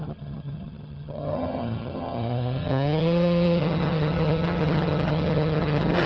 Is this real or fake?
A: fake